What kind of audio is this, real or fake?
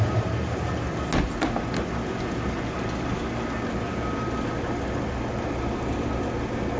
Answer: real